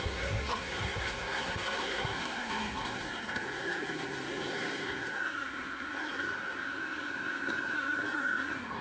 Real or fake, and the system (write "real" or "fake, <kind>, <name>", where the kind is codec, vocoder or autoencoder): fake, codec, SNAC